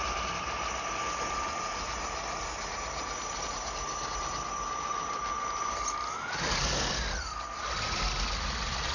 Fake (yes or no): no